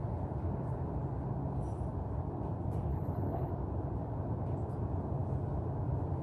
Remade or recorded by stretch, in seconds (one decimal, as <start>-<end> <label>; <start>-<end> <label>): 0.0-2.9 recorded; 2.9-3.5 remade; 3.5-6.2 recorded